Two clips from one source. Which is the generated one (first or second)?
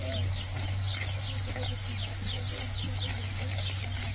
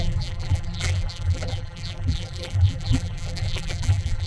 second